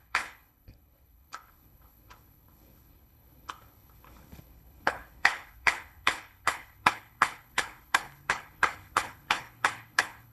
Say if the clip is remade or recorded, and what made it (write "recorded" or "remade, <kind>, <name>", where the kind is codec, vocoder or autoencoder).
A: remade, codec, HILCodec